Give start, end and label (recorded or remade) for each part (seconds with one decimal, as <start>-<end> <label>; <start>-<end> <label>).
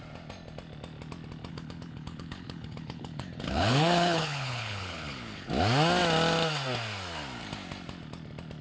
0.0-1.5 recorded; 1.5-5.5 remade; 5.5-8.6 recorded